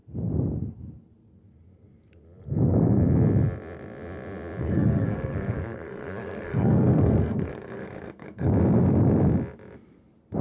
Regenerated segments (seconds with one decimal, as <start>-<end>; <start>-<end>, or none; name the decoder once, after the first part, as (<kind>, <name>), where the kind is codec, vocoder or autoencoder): 4.6-8.5 (codec, SNAC)